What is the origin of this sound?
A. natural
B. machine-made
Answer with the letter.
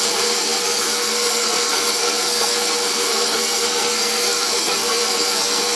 B